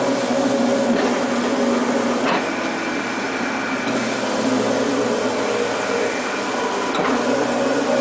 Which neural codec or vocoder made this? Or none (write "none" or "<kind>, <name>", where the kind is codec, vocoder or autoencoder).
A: none